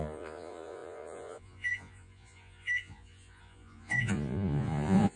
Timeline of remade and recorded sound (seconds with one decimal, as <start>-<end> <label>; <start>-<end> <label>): 0.0-5.2 remade